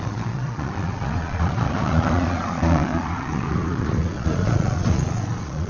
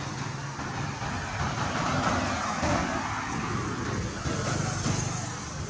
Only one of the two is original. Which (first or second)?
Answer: second